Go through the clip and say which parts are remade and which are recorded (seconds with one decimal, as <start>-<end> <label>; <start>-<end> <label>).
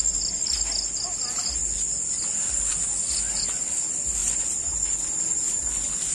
0.0-6.1 recorded